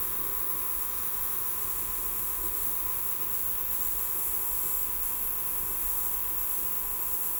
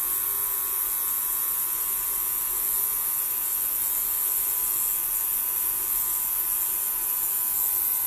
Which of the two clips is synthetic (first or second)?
first